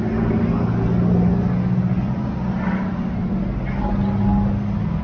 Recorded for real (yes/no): yes